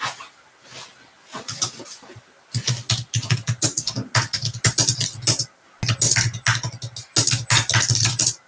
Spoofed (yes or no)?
no